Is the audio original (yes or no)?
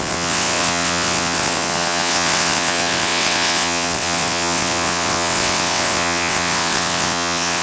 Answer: no